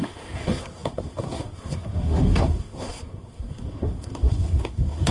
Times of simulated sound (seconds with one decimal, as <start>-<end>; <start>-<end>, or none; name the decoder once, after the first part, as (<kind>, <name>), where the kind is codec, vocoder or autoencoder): 0.0-5.1 (codec, SNAC)